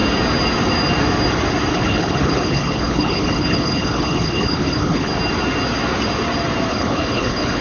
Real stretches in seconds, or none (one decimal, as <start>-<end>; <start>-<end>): 0.0-1.7; 5.1-6.7